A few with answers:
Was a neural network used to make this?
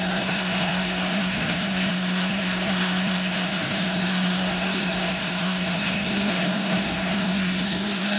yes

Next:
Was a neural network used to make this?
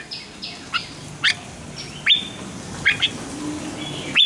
no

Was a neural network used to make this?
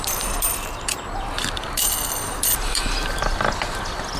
yes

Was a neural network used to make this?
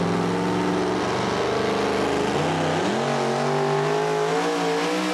no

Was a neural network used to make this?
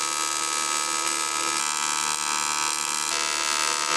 no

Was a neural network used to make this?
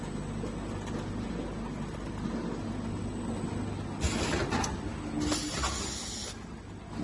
no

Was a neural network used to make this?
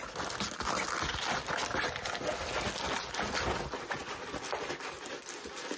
no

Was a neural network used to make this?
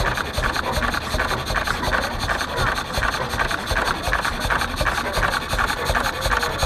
no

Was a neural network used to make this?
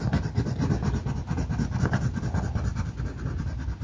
no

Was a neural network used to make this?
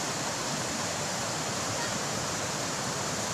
yes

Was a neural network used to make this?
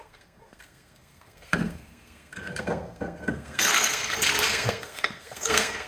yes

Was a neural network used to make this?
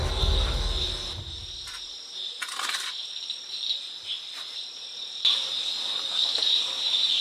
no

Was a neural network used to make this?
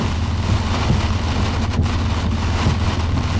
no